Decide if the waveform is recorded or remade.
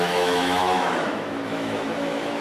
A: remade